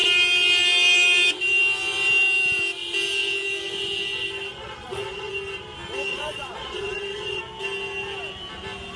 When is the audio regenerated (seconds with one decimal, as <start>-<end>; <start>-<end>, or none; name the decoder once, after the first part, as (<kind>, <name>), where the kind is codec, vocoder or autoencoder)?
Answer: 4.5-5.3 (vocoder, Vocos); 6.1-7.4